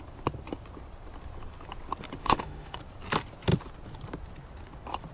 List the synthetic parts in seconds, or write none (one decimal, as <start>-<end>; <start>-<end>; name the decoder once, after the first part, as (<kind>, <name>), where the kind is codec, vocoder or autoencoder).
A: 2.2-2.8 (autoencoder, DAC-VAE)